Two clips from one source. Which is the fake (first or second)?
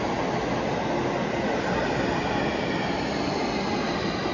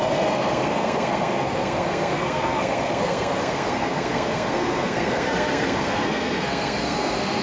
second